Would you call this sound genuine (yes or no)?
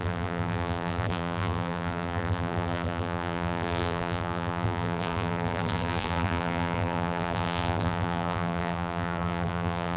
no